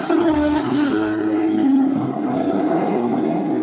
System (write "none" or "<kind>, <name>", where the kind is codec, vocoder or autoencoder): codec, SNAC